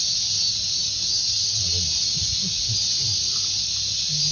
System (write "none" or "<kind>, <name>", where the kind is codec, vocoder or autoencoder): none